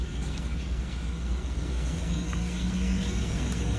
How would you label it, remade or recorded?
remade